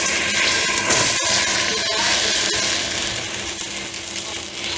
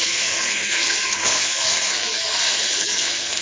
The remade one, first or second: second